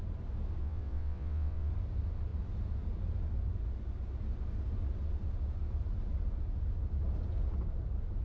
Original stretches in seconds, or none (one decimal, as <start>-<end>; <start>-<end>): 0.0-0.6; 1.7-8.2